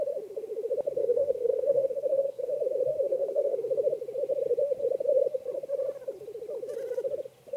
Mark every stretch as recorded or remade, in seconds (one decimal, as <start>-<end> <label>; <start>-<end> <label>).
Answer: 0.0-1.0 recorded; 1.0-2.5 remade; 2.5-3.1 recorded; 3.1-3.6 remade; 3.6-7.6 recorded